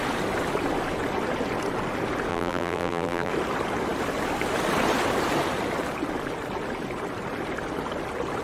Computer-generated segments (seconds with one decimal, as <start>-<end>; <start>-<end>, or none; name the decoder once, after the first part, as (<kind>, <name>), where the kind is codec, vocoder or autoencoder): 2.3-3.3 (vocoder, BigVGAN v2)